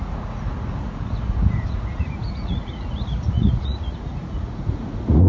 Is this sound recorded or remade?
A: remade